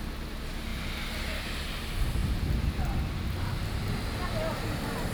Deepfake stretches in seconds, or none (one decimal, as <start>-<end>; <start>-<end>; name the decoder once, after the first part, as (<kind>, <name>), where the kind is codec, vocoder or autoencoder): none